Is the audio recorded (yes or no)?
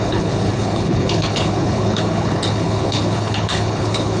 no